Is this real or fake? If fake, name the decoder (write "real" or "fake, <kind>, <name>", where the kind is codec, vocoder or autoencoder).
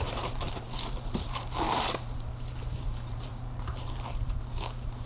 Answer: fake, vocoder, BigVGAN v2